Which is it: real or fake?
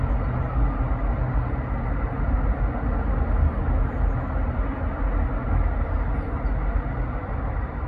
real